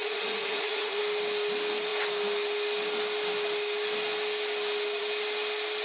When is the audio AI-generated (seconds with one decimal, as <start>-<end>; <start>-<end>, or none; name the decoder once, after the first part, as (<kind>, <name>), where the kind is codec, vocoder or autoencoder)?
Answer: 0.0-1.0 (vocoder, Vocos)